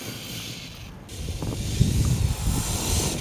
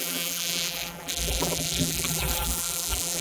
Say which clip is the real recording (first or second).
first